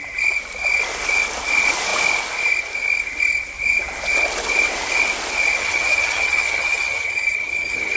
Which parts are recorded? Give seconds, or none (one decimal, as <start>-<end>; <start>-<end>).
0.0-5.6